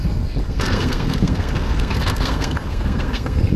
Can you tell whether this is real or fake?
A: fake